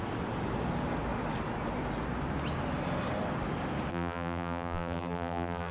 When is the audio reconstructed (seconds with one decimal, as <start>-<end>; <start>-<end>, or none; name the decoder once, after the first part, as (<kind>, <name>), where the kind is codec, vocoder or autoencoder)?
3.9-5.7 (vocoder, BigVGAN v2)